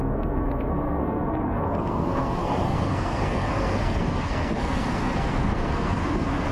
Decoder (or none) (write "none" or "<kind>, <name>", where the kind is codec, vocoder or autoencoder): codec, SNAC